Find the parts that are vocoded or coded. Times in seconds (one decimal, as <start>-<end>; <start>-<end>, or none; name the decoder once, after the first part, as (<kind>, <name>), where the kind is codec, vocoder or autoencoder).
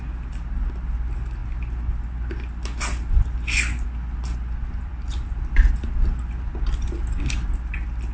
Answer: none